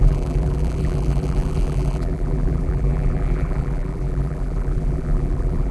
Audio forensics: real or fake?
fake